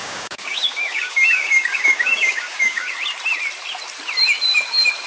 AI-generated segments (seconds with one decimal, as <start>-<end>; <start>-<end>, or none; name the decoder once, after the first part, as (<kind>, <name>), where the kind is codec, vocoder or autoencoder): 0.0-2.9 (codec, DAC)

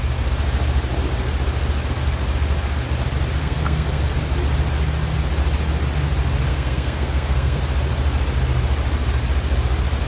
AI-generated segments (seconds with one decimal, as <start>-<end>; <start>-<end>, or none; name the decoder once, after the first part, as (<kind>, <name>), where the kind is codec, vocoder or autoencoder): 3.4-4.0 (codec, SNAC); 6.5-7.6

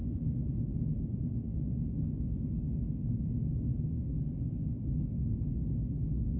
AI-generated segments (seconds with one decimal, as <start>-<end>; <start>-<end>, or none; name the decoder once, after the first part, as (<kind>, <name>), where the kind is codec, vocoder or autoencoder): 0.0-0.6 (autoencoder, DAC-VAE)

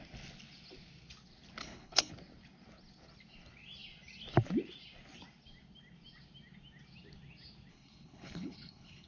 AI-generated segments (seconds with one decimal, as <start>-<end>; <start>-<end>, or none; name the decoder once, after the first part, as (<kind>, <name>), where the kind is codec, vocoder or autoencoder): 1.6-2.1 (codec, HILCodec); 7.7-9.1